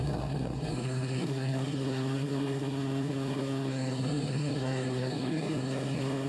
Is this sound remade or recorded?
remade